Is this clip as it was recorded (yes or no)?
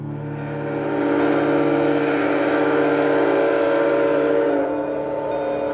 yes